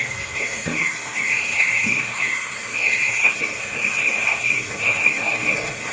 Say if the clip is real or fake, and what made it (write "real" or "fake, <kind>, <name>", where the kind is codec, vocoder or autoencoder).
fake, codec, SNAC